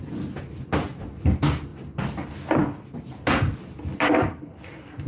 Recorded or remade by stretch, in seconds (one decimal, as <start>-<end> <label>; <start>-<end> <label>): 0.0-5.1 recorded